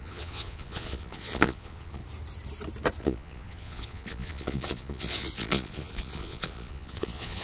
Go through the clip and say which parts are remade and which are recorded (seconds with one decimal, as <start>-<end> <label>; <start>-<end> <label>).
0.0-2.0 remade; 2.0-3.0 recorded; 3.0-7.4 remade